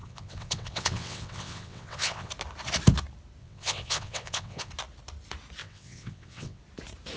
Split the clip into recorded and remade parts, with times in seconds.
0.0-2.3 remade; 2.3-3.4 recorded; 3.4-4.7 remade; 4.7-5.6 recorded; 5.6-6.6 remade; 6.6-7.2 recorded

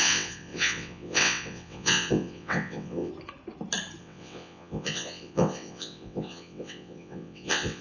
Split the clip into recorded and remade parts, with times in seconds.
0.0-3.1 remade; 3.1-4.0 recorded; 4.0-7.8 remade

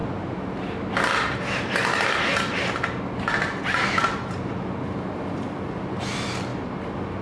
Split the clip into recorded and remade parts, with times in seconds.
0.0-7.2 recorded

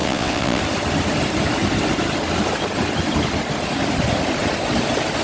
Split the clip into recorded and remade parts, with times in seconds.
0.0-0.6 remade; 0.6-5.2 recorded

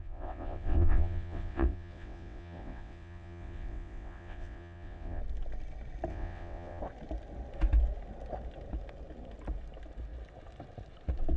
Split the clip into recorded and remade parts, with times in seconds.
0.0-5.2 remade; 5.2-6.1 recorded; 6.1-6.8 remade; 6.8-11.4 recorded

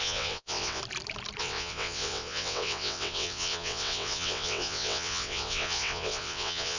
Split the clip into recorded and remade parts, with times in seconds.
0.0-0.8 remade; 0.8-1.4 recorded; 1.4-6.8 remade

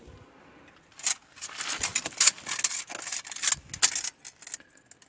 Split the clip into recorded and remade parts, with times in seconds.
0.0-5.1 recorded